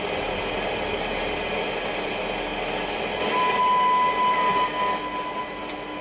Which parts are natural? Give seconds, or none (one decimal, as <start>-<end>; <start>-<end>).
0.0-6.0